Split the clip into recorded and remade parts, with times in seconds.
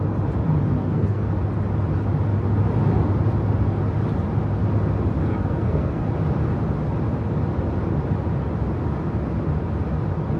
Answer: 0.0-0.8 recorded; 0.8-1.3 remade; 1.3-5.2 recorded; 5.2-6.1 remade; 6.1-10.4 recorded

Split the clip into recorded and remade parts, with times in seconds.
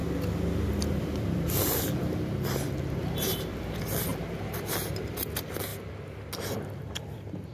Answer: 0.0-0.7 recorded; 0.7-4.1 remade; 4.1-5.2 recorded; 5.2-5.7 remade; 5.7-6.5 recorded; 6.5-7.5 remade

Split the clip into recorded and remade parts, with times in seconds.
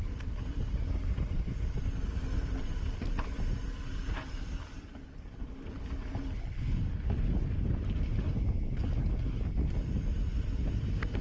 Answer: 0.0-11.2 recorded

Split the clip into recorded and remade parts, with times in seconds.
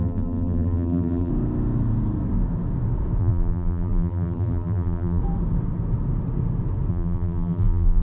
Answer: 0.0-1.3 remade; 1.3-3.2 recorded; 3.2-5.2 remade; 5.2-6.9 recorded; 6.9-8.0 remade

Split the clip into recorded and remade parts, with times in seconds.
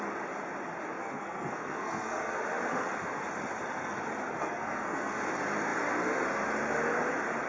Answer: 0.0-1.0 recorded; 1.0-2.4 remade; 2.4-4.4 recorded; 4.4-5.2 remade; 5.2-7.5 recorded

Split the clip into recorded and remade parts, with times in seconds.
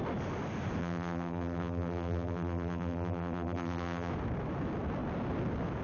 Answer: 0.0-0.8 recorded; 0.8-4.1 remade; 4.1-5.8 recorded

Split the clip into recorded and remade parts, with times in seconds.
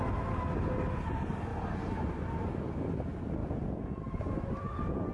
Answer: 0.0-3.4 recorded; 3.4-4.0 remade; 4.0-5.1 recorded